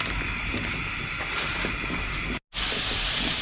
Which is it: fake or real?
real